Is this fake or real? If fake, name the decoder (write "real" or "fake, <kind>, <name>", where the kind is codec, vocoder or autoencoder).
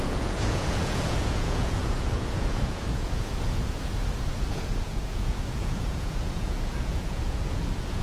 fake, vocoder, Vocos